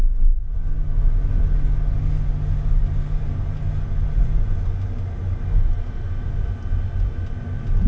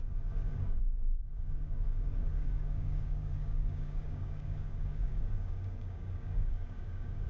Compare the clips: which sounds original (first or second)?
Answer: first